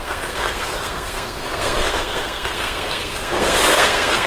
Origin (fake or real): fake